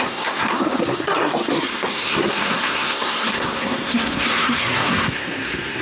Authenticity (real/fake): fake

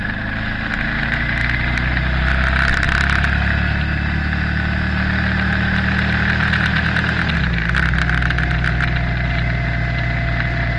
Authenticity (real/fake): real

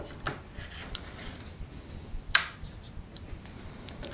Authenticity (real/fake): real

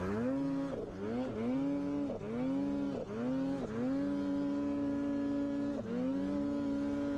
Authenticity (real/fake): real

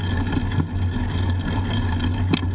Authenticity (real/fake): real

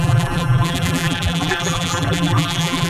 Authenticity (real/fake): fake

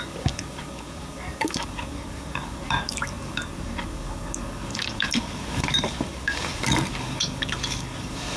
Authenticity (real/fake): fake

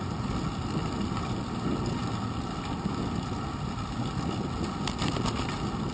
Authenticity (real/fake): real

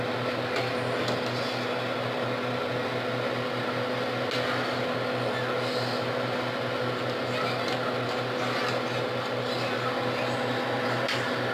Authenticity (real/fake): real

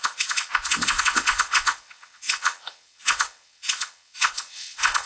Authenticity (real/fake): fake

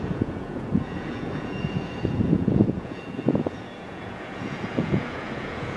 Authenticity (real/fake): fake